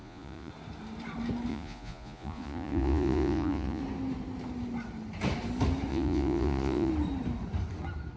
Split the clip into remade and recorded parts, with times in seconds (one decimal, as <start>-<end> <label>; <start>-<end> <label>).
0.0-0.5 remade; 0.5-1.5 recorded; 1.5-3.8 remade; 3.8-5.9 recorded; 5.9-6.9 remade; 6.9-8.2 recorded